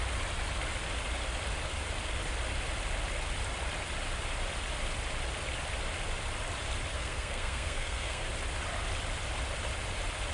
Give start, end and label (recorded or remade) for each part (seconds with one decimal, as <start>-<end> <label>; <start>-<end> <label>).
0.0-6.9 recorded; 6.9-8.3 remade; 8.3-10.3 recorded